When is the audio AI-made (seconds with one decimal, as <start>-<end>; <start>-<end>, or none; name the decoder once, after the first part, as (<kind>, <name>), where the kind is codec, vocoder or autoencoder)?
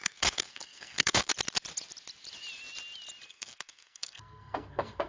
0.0-1.3 (codec, SNAC); 3.3-5.1